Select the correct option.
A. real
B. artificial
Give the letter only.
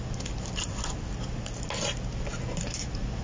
A